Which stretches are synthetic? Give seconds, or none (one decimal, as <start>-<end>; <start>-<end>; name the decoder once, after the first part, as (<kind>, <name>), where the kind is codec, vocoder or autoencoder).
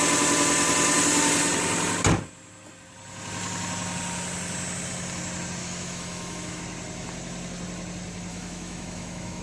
5.6-6.6 (autoencoder, DAC-VAE); 8.3-9.4